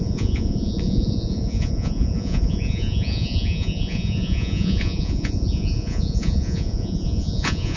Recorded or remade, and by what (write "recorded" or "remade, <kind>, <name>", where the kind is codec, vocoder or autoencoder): remade, vocoder, Vocos